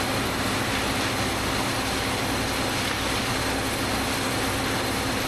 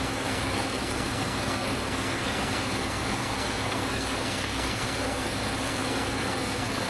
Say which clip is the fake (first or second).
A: second